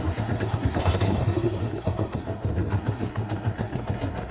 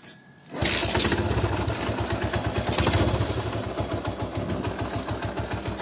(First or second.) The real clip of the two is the second